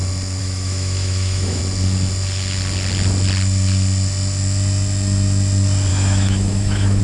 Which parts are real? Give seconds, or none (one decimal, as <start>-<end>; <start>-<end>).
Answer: 0.0-0.4; 1.6-5.9